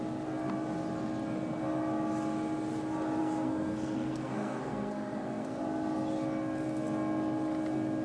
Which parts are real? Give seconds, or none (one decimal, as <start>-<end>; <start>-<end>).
0.0-3.2; 5.6-8.0